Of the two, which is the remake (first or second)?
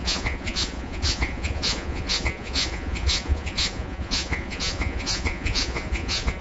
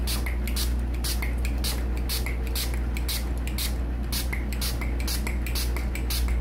first